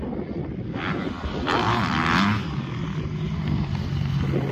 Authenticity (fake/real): real